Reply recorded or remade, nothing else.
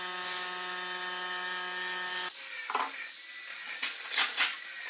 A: recorded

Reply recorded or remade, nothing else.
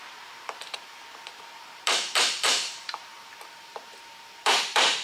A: remade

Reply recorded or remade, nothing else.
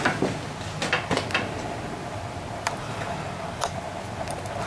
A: recorded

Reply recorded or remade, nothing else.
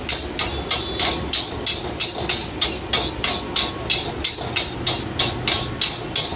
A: recorded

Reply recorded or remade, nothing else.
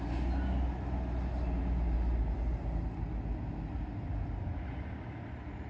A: recorded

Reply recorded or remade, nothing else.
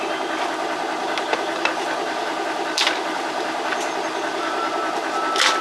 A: recorded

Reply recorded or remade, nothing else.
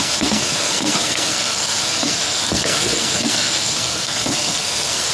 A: remade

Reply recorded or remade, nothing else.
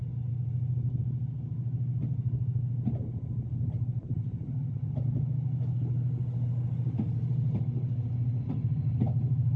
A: recorded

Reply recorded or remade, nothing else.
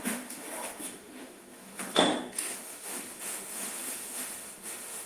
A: remade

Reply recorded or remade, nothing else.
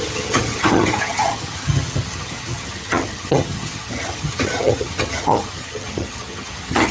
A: remade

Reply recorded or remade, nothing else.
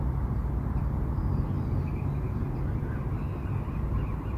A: recorded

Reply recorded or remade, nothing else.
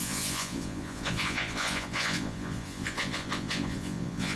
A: remade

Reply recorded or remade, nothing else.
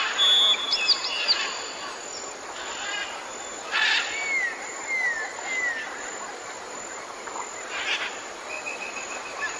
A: recorded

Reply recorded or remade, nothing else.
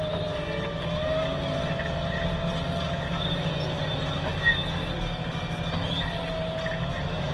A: recorded